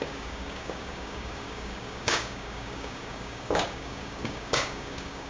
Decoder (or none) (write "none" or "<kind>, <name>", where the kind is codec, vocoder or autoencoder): codec, DAC